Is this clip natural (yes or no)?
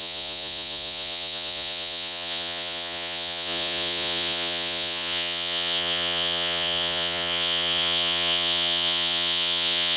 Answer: no